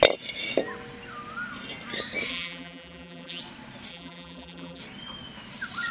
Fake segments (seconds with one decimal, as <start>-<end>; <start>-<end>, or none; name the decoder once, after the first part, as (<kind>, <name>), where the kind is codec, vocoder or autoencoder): 2.3-3.4 (vocoder, BigVGAN v2); 3.9-4.8